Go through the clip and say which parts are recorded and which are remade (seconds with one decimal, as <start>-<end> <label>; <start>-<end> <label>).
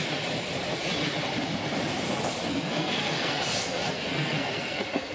0.0-2.5 recorded; 2.5-5.1 remade